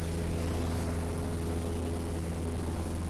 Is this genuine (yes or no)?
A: yes